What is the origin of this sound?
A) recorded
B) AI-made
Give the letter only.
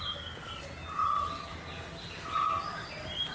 A